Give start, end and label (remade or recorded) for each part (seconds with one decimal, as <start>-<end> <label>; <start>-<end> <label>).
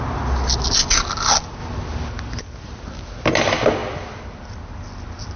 0.0-5.4 recorded